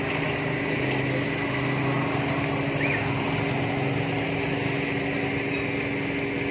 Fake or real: real